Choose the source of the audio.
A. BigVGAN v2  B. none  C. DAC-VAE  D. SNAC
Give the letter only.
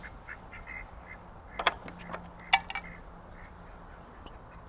B